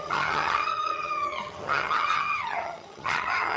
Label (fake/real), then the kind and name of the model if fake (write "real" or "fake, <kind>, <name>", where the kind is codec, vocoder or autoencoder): fake, vocoder, HiFi-GAN